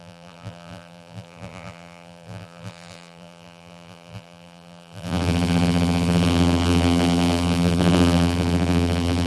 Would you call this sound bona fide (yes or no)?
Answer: no